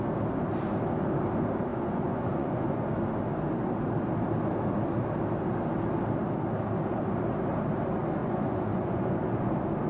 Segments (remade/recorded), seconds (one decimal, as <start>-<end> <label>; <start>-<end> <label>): 0.0-1.7 recorded; 1.7-2.8 remade; 2.8-8.2 recorded; 8.2-9.5 remade; 9.5-9.9 recorded